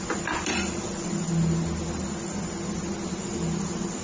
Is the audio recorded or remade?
recorded